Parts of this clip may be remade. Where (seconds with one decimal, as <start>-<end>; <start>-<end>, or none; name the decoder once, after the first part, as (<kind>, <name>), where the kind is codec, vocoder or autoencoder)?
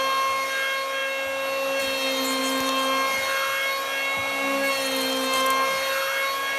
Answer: none